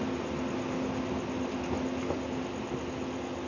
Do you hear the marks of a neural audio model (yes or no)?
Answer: no